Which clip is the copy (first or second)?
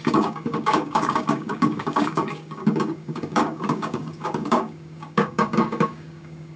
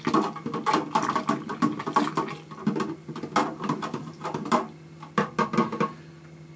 first